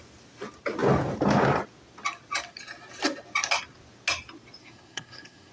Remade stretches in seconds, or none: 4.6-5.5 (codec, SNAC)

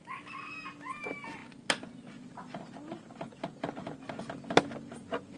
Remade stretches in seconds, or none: none

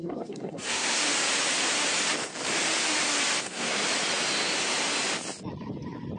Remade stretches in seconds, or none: 0.0-1.0 (codec, SNAC); 3.4-3.8